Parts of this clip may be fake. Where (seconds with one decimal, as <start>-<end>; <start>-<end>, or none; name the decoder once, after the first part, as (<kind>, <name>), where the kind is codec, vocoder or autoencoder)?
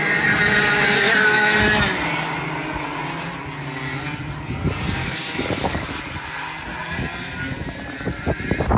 5.0-6.0 (codec, DAC)